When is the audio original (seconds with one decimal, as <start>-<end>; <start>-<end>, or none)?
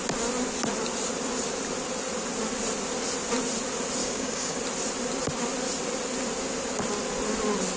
0.0-4.0; 4.6-7.8